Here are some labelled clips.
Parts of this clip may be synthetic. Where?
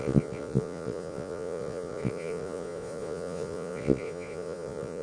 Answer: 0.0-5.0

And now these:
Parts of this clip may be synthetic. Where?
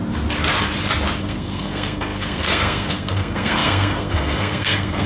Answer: 1.2-5.1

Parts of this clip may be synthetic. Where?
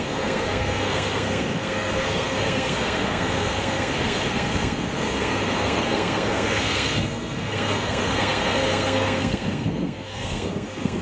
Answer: 0.0-11.0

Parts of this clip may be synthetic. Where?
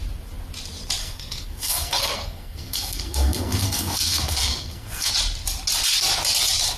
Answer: 1.0-5.1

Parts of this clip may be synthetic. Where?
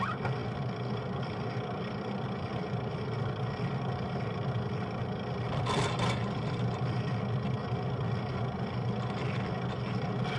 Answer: none